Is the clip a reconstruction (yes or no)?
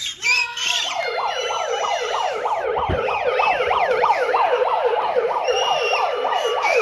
yes